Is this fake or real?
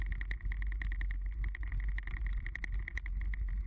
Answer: real